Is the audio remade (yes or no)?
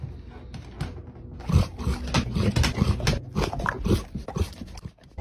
no